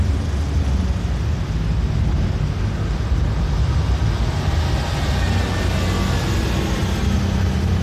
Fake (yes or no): no